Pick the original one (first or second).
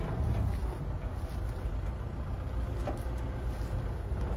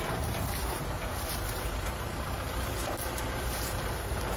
first